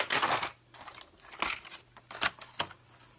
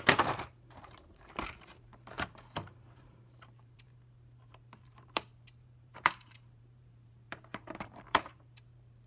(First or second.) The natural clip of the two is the first